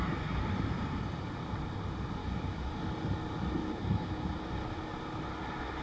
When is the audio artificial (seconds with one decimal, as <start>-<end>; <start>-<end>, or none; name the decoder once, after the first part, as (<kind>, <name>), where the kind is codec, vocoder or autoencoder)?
2.2-2.7 (autoencoder, DAC-VAE); 3.6-4.3